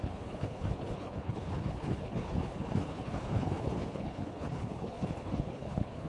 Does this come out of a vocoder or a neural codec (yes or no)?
yes